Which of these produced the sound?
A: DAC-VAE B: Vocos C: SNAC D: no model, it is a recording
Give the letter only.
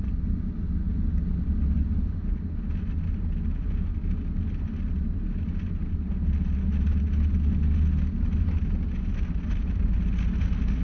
D